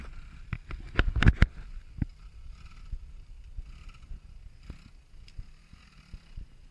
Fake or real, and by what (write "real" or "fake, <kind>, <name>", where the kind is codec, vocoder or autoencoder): real